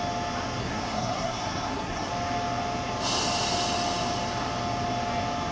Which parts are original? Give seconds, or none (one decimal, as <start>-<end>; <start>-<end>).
0.0-0.6; 2.1-5.5